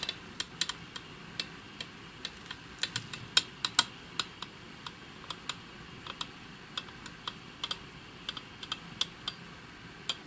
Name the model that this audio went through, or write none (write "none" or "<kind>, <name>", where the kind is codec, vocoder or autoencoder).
none